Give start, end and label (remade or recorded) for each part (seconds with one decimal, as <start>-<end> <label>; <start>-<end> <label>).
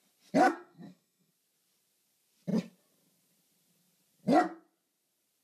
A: 0.0-0.4 recorded; 0.4-1.3 remade; 1.3-5.4 recorded